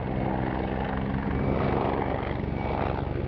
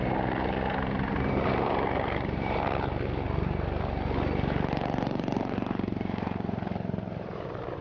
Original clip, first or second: first